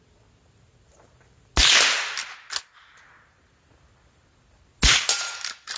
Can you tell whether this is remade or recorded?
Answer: recorded